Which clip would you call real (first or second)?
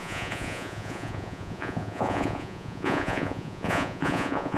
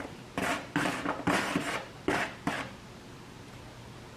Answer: second